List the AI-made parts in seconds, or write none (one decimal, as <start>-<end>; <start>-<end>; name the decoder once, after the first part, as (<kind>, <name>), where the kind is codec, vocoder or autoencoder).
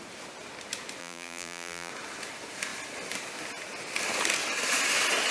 1.0-1.9 (vocoder, BigVGAN v2)